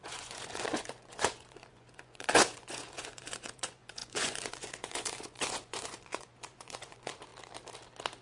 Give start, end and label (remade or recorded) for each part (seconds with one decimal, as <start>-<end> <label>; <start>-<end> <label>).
0.0-7.3 remade; 7.3-8.2 recorded